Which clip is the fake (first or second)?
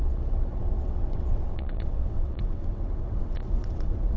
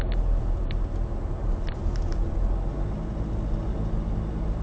first